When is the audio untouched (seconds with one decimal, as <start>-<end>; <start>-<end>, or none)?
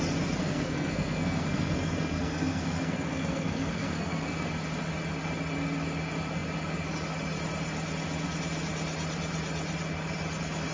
0.0-0.4; 4.5-10.7